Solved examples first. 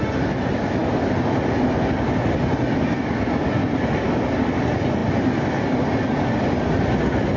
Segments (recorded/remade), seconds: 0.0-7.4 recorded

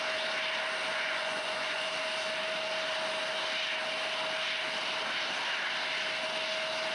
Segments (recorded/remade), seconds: 0.0-0.9 recorded; 0.9-1.9 remade; 1.9-6.9 recorded

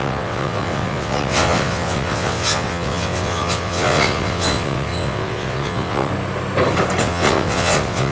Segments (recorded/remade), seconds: 0.0-6.1 remade; 6.1-7.0 recorded; 7.0-8.1 remade

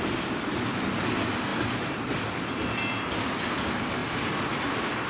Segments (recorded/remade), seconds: 0.0-5.1 recorded

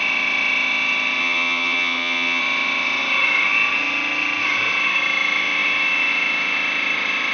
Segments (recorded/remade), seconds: 0.0-1.2 recorded; 1.2-2.4 remade; 2.4-7.3 recorded